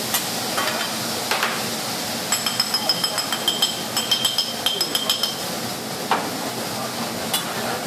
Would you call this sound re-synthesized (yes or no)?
no